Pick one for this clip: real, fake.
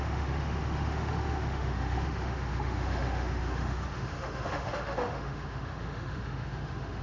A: fake